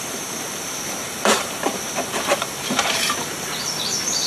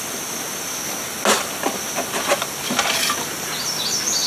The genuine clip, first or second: second